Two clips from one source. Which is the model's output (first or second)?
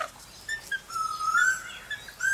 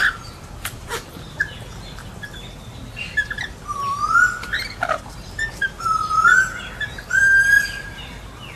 second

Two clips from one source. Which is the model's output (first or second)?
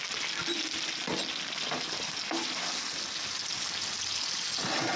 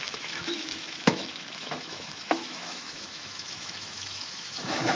second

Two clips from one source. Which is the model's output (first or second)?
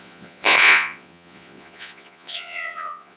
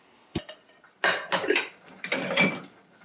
first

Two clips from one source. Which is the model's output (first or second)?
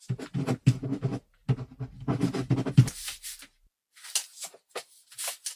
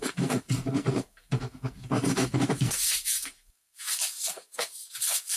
second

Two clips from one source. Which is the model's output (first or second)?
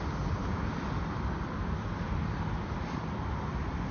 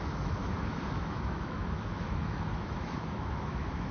second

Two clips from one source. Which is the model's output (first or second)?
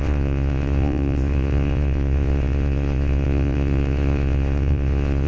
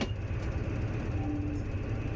first